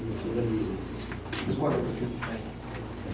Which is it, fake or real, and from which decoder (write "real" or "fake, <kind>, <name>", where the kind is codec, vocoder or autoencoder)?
real